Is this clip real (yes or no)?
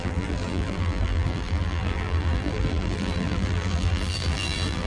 no